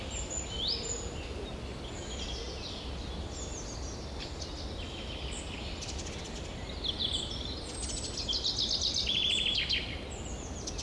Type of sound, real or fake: real